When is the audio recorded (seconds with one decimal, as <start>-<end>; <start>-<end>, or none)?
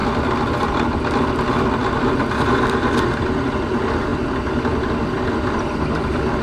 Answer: 0.0-6.4